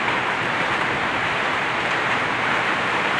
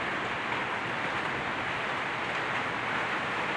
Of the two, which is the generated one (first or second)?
first